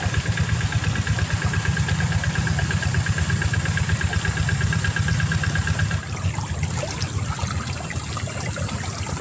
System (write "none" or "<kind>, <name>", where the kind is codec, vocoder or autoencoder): none